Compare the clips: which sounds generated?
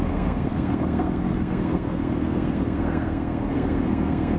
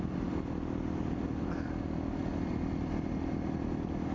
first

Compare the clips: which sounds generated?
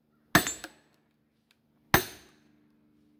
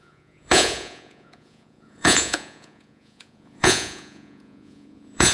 second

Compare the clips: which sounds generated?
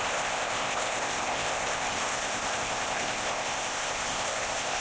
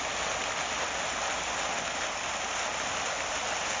first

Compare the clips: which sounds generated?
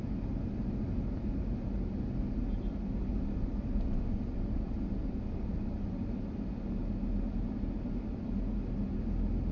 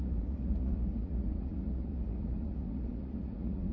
second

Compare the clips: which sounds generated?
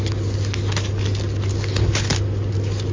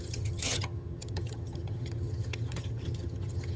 second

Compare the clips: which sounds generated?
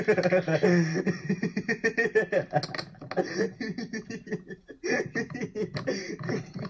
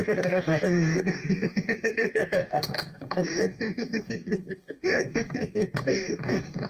second